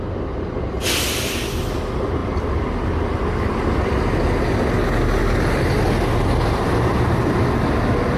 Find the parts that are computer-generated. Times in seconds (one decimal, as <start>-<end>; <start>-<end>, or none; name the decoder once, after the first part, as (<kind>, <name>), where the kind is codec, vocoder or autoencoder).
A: 2.2-3.9 (vocoder, BigVGAN v2); 5.2-6.7